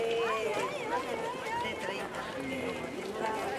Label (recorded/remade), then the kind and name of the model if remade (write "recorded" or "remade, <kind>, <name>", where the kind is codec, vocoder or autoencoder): recorded